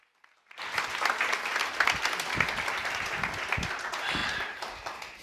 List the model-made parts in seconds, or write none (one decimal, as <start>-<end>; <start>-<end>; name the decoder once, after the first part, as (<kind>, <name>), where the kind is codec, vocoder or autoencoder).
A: none